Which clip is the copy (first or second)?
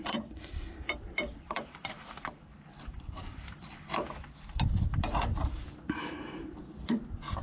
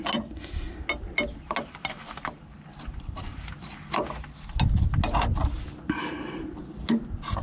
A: first